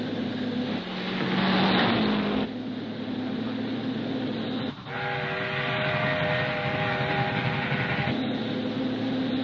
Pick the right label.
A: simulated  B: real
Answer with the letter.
B